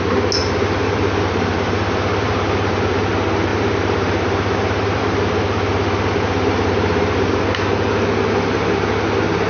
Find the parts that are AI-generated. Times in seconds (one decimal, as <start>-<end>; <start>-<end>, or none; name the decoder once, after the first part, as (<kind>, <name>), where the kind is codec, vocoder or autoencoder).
0.4-3.1 (vocoder, BigVGAN v2); 3.5-7.4